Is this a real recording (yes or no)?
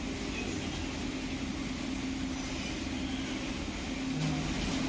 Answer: yes